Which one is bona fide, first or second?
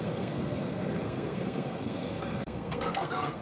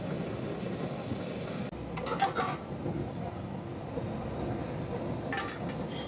second